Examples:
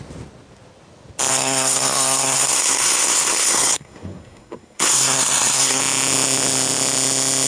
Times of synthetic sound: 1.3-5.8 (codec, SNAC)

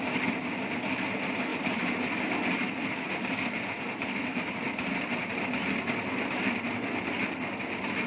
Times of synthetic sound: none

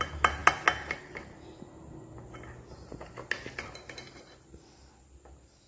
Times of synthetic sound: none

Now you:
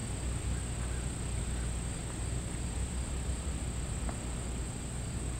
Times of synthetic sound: none

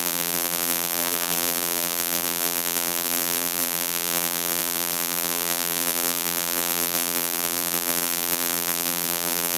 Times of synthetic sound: 0.0-9.6 (vocoder, BigVGAN v2)

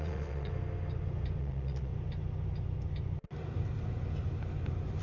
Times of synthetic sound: 0.0-0.5 (vocoder, Vocos); 1.4-1.9

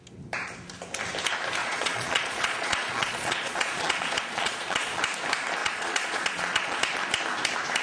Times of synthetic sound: 1.6-5.0 (vocoder, Vocos); 5.6-6.8